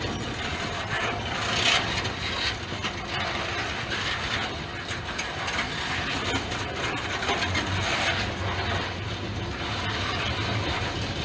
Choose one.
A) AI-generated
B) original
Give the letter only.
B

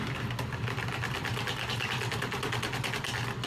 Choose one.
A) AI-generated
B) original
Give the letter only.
B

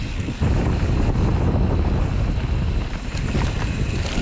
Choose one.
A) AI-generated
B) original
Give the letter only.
B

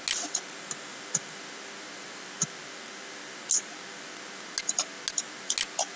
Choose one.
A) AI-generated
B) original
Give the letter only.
B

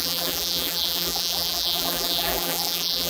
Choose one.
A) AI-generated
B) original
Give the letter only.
A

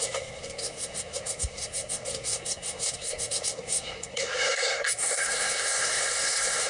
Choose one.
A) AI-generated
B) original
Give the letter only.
A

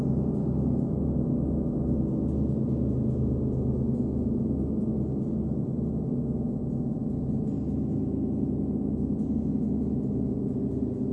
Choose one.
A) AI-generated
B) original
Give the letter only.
B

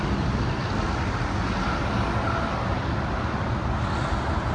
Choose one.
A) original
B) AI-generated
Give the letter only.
A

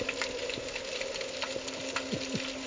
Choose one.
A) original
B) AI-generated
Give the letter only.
A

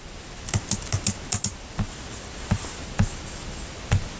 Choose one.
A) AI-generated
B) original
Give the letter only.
B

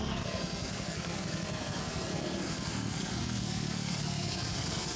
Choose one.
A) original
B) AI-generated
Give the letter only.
B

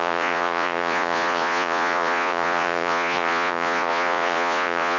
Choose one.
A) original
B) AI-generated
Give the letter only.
B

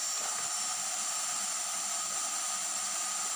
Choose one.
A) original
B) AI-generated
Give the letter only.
A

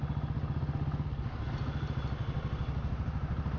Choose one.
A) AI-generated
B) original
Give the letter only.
B